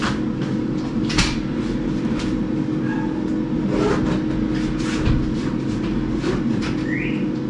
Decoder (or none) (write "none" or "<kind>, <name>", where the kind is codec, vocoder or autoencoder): none